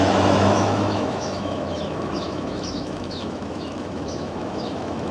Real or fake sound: fake